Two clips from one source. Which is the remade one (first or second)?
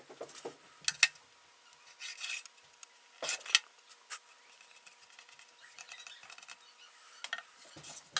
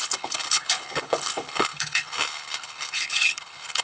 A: second